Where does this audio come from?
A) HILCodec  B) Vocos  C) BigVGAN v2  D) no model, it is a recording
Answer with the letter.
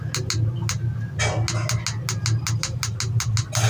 D